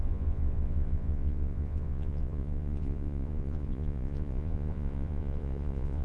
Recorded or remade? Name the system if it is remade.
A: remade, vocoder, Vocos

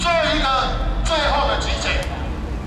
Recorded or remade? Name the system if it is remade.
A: recorded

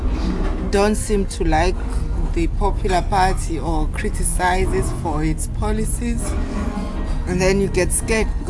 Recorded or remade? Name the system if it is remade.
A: recorded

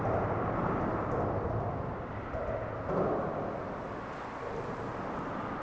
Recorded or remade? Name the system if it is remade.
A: recorded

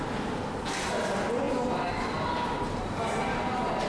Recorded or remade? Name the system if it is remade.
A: recorded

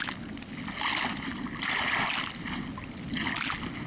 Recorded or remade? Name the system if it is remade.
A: recorded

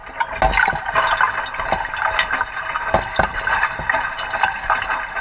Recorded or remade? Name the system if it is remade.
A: recorded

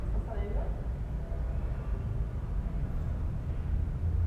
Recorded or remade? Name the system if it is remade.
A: recorded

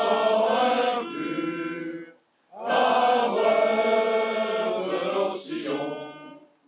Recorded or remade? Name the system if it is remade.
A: recorded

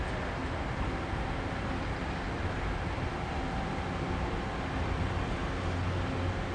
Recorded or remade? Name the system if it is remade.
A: recorded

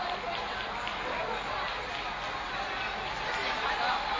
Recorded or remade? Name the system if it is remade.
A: recorded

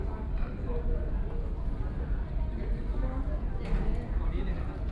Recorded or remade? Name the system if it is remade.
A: recorded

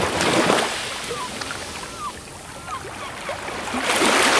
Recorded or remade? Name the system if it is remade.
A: recorded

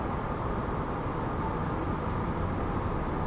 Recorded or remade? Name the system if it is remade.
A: recorded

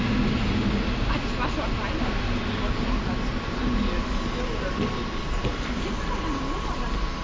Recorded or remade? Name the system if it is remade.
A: recorded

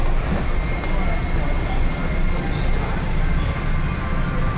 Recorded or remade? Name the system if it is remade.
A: recorded